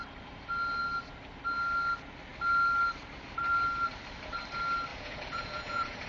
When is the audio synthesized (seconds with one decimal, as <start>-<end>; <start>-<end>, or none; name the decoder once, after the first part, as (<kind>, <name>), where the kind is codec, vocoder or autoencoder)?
4.9-6.1 (vocoder, Vocos)